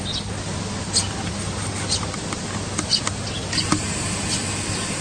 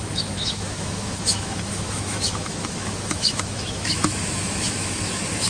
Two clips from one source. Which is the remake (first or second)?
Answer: second